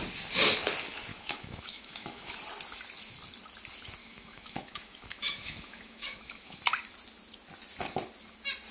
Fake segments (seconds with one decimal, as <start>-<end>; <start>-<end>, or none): 1.1-2.4; 4.0-6.6